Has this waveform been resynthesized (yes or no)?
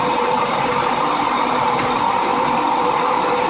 yes